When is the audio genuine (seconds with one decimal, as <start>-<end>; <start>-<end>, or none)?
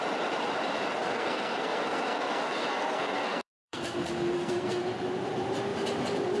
0.0-1.0; 4.8-6.4